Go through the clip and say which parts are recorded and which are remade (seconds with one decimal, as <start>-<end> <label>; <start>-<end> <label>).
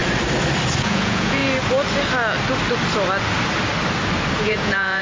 0.0-0.8 recorded; 0.8-1.4 remade; 1.4-4.4 recorded; 4.4-5.0 remade